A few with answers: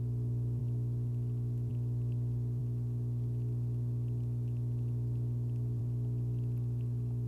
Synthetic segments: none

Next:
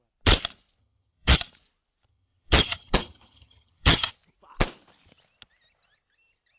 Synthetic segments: 0.8-1.4 (vocoder, HiFi-GAN); 2.1-4.1

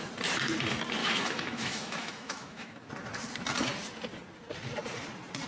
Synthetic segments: 1.0-2.9 (autoencoder, DAC-VAE)

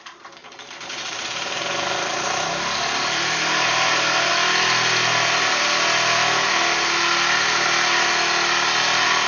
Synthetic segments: 0.4-4.3 (vocoder, BigVGAN v2)